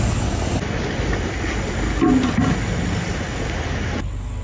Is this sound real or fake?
real